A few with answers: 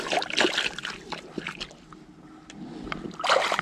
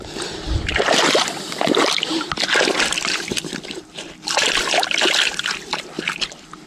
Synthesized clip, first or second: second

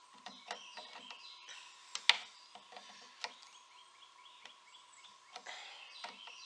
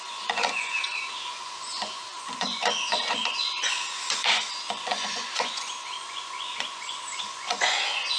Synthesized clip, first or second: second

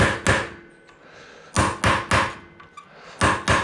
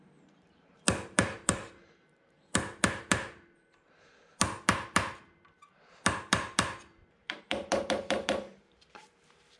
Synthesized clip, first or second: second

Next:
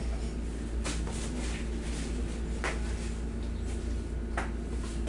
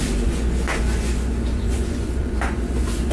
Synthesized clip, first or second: second